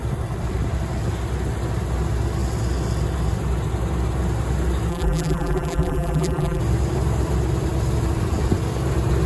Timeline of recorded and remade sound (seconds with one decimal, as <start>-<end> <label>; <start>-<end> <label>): 0.0-4.9 recorded; 4.9-6.6 remade; 6.6-9.3 recorded